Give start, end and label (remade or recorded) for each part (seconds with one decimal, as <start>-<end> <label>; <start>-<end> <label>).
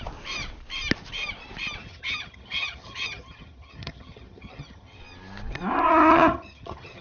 0.0-1.8 recorded; 1.8-5.0 remade; 5.0-5.9 recorded; 5.9-7.0 remade